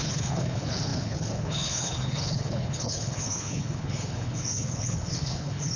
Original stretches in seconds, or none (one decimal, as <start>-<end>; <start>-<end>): none

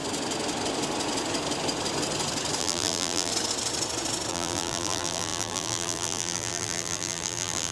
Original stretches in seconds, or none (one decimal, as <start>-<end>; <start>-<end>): 0.0-2.6; 3.3-4.3